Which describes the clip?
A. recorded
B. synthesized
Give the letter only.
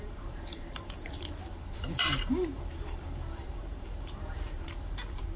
B